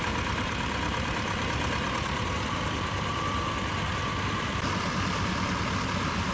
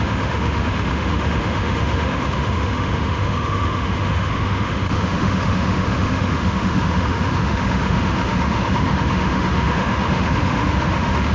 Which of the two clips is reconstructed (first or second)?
second